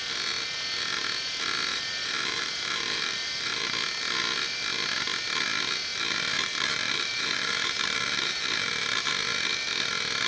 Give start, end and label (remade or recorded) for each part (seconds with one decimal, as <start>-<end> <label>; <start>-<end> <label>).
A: 0.0-1.7 recorded; 1.7-3.7 remade; 3.7-5.9 recorded; 5.9-9.1 remade; 9.1-10.3 recorded